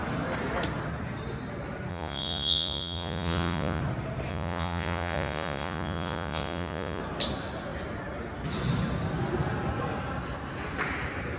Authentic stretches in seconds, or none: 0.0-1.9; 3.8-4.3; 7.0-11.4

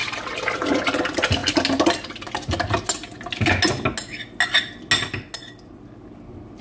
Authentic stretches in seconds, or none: 0.0-6.6